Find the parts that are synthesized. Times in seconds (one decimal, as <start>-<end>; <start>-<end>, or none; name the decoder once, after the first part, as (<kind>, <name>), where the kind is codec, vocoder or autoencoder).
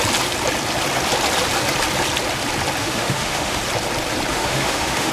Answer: 2.8-3.6 (autoencoder, DAC-VAE); 4.3-5.1